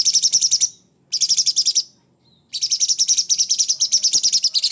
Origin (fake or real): real